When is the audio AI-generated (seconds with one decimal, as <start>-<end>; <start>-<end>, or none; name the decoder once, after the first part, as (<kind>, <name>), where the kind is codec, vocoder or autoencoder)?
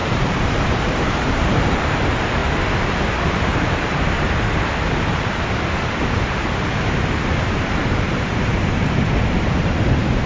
0.0-10.3 (vocoder, BigVGAN v2)